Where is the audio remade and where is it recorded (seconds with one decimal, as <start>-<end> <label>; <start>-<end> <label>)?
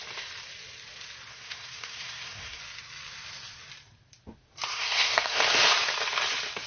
0.0-1.3 recorded; 1.3-2.6 remade; 2.6-4.7 recorded; 4.7-5.4 remade; 5.4-6.7 recorded